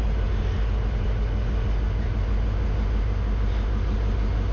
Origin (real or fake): real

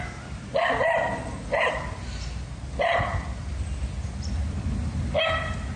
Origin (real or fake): real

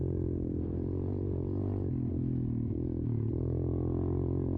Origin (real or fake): real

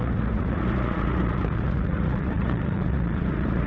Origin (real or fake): fake